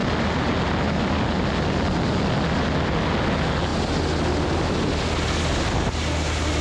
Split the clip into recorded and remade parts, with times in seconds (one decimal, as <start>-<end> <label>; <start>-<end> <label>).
0.0-6.6 recorded